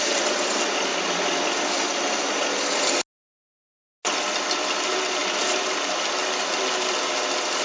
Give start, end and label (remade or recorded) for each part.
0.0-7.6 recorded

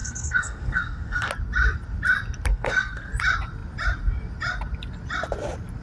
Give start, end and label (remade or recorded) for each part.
0.0-1.3 remade; 1.3-2.5 recorded; 2.5-3.1 remade; 3.1-5.8 recorded

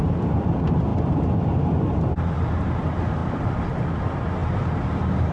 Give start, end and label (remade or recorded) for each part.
0.0-4.4 remade; 4.4-5.3 recorded

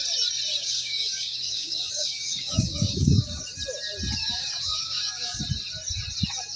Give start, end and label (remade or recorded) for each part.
0.0-0.6 recorded; 0.6-3.4 remade; 3.4-4.2 recorded; 4.2-5.4 remade; 5.4-6.6 recorded

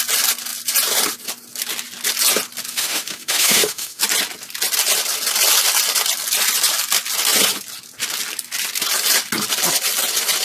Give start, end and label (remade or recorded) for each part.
0.0-2.7 recorded; 2.7-4.0 remade; 4.0-10.4 recorded

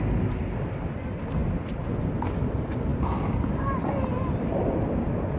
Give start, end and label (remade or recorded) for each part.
0.0-1.4 remade; 1.4-2.3 recorded; 2.3-5.4 remade

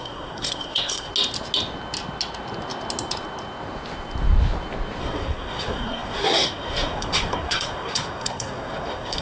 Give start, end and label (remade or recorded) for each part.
0.0-1.1 remade; 1.1-5.0 recorded; 5.0-9.2 remade